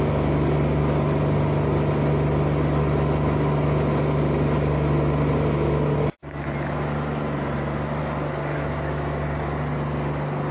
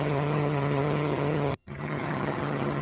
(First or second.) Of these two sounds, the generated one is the second